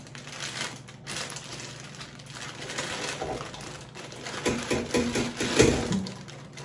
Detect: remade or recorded recorded